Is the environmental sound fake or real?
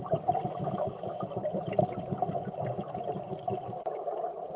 real